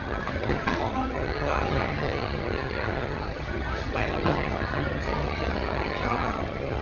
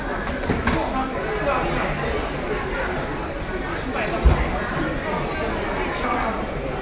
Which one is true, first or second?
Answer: second